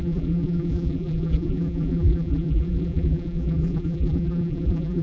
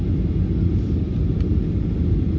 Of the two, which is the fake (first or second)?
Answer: first